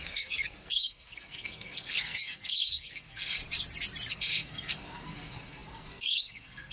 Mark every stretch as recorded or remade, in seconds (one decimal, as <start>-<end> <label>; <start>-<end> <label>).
0.0-3.4 remade; 3.4-4.1 recorded; 4.1-6.7 remade